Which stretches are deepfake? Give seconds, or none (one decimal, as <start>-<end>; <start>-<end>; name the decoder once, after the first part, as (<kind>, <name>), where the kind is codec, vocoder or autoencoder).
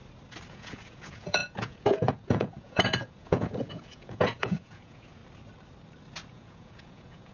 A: 0.5-5.2 (vocoder, Vocos); 6.3-7.3